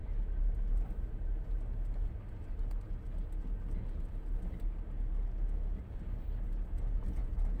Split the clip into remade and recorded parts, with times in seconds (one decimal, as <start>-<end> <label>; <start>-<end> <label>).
0.0-7.6 recorded